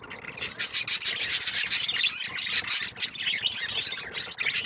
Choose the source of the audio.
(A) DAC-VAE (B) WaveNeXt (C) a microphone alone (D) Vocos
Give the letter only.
C